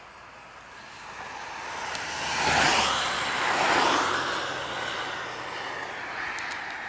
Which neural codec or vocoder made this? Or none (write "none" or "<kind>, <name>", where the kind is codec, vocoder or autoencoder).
none